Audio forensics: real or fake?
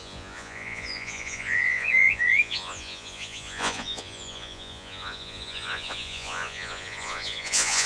fake